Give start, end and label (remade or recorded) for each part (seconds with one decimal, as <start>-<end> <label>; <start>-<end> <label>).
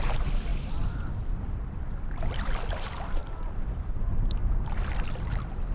0.0-4.4 remade; 4.4-5.0 recorded; 5.0-5.7 remade